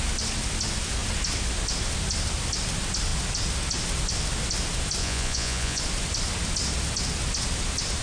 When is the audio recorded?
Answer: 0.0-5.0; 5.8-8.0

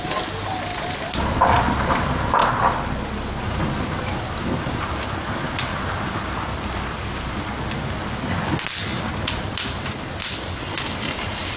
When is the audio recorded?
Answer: 0.0-11.6